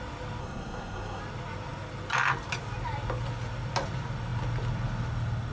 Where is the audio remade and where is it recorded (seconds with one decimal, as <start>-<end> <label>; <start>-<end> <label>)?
0.0-0.4 recorded; 0.4-1.2 remade; 1.2-5.5 recorded